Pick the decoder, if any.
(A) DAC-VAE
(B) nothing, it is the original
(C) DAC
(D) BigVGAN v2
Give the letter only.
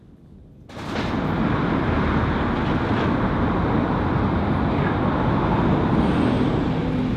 B